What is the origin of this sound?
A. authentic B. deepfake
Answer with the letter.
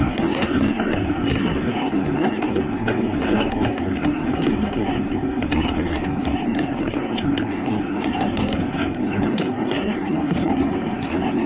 B